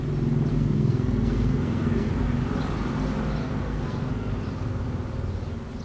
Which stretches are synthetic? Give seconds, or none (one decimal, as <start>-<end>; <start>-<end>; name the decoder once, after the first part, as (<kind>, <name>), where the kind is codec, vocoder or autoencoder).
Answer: 0.5-2.1 (codec, SNAC); 3.4-4.3